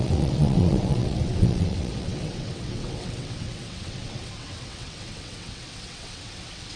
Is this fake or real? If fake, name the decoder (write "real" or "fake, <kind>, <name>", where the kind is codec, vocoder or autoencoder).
fake, vocoder, WaveNeXt